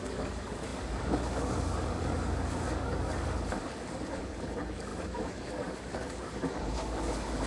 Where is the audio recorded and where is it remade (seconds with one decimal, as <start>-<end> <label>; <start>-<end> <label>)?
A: 0.0-7.5 remade